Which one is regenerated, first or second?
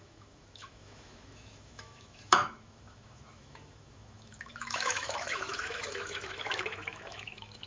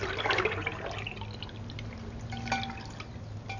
first